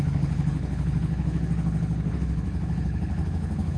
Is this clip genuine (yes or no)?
no